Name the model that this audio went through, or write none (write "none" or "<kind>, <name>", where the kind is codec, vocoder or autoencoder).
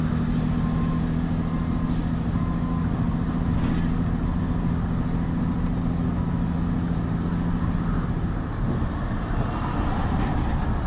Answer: none